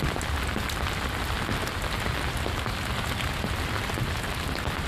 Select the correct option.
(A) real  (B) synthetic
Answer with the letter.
A